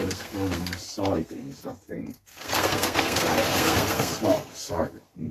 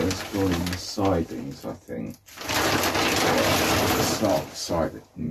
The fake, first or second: first